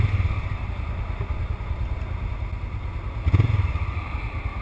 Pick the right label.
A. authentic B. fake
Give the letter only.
A